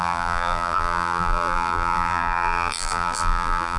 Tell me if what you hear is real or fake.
fake